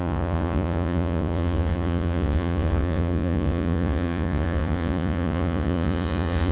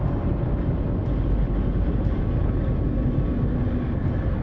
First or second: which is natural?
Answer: second